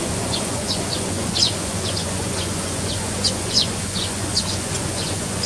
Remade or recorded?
remade